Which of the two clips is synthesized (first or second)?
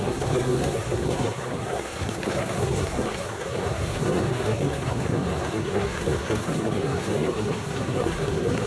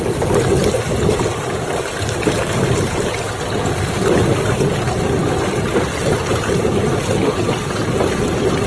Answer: first